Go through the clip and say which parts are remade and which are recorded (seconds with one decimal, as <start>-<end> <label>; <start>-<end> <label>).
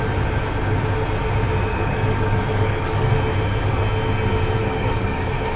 0.0-1.7 recorded; 1.7-3.1 remade; 3.1-4.6 recorded; 4.6-5.6 remade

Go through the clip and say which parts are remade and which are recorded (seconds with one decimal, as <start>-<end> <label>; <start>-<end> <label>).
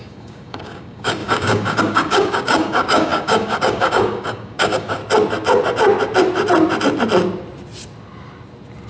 0.0-5.0 remade; 5.0-8.9 recorded